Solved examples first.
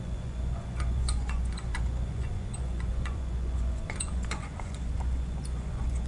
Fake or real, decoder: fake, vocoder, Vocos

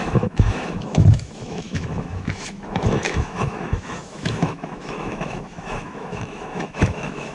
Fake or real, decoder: fake, autoencoder, DAC-VAE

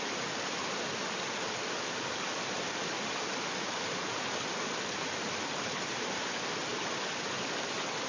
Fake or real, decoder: real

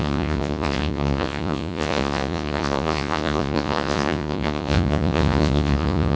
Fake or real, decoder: fake, vocoder, Vocos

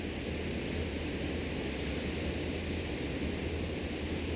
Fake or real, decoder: real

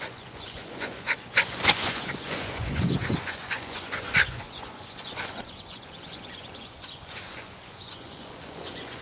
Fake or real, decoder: fake, vocoder, Vocos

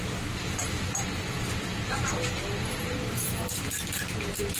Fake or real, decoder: real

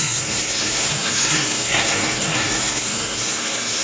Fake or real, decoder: fake, codec, SNAC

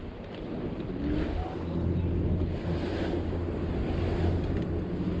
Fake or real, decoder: real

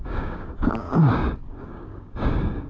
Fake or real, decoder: fake, codec, DAC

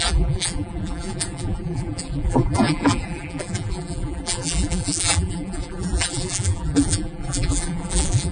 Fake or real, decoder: fake, vocoder, BigVGAN v2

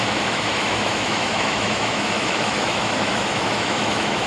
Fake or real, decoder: fake, autoencoder, DAC-VAE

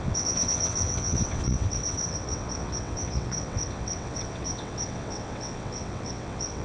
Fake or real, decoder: fake, vocoder, WaveNeXt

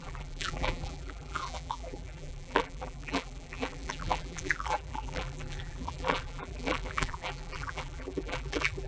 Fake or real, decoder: fake, vocoder, BigVGAN v2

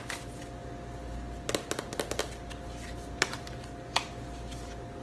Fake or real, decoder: real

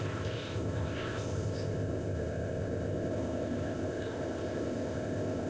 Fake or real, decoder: fake, codec, ZipCodec